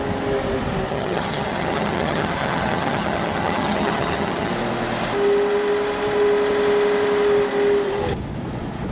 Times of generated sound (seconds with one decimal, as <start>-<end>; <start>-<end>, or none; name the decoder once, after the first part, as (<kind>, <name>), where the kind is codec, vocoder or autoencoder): 0.9-4.5 (vocoder, HiFi-GAN)

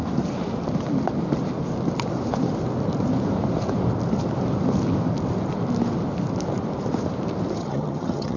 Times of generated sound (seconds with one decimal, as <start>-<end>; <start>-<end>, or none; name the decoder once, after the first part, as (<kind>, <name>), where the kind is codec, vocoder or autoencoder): 7.6-8.4 (vocoder, HiFi-GAN)